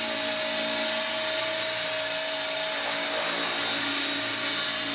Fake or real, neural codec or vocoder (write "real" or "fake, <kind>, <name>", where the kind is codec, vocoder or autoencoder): real